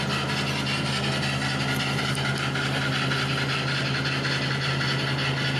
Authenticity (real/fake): real